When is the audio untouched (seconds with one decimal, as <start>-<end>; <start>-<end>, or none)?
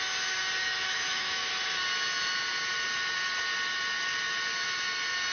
0.0-0.6; 1.5-5.3